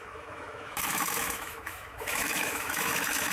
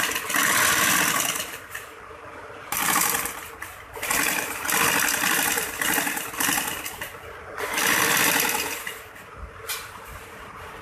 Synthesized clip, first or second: first